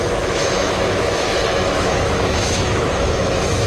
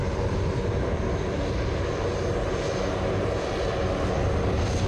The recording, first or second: second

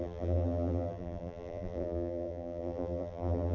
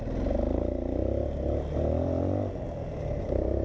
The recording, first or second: second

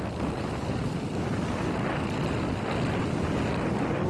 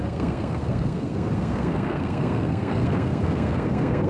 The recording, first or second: first